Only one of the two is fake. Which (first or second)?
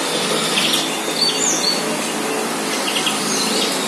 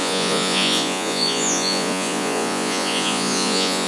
second